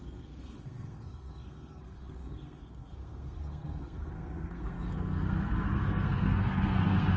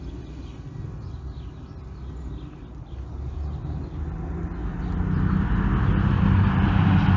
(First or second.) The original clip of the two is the second